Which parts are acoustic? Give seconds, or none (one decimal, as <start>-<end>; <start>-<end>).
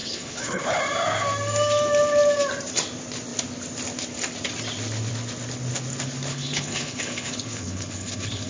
0.8-6.3